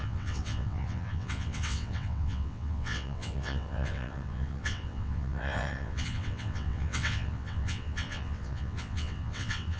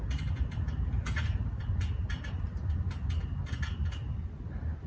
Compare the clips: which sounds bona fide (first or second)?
second